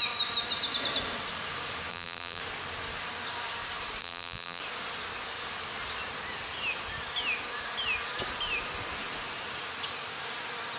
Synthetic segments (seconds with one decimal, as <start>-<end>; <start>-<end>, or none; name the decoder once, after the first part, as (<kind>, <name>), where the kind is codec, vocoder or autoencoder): 1.9-2.4 (vocoder, BigVGAN v2); 4.0-4.6